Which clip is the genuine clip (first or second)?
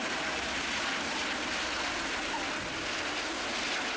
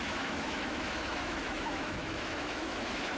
first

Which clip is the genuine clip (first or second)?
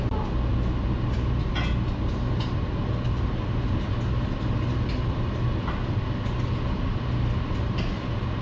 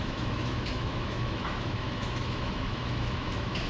first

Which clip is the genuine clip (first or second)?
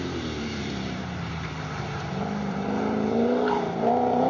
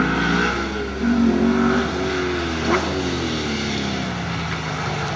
second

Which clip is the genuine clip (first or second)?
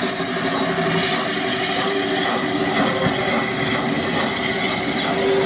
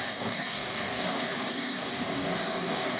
first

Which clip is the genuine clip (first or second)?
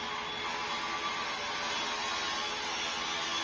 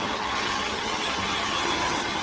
first